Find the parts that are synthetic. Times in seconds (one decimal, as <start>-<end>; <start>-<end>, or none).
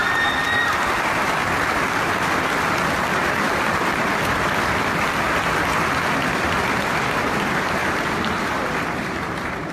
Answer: 7.8-8.5